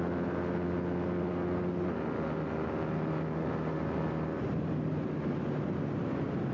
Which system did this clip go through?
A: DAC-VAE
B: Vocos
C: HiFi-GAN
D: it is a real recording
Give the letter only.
D